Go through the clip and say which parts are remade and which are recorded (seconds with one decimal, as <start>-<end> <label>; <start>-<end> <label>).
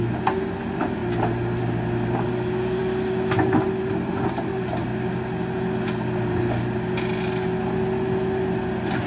0.0-9.1 recorded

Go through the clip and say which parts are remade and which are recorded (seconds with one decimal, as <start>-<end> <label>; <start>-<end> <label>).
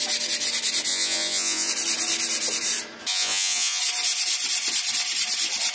0.0-0.9 recorded; 0.9-1.7 remade; 1.7-3.1 recorded; 3.1-3.8 remade; 3.8-5.7 recorded